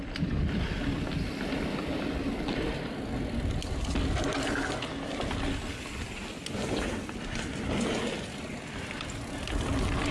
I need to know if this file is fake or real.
real